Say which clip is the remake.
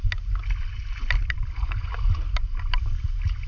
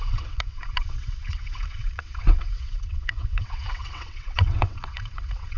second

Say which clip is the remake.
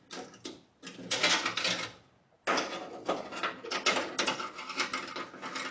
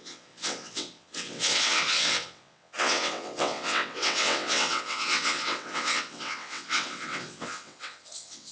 second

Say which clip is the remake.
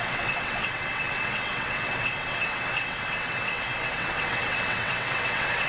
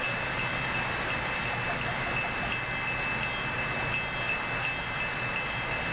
first